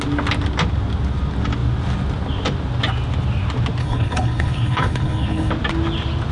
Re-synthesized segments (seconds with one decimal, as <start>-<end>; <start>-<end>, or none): 3.8-5.5